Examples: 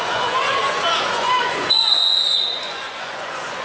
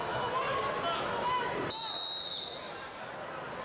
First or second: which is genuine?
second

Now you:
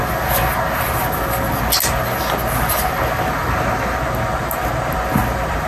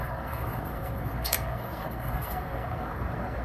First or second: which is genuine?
first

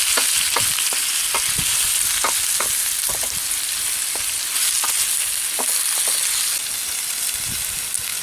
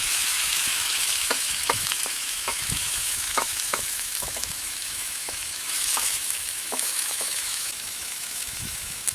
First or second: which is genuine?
first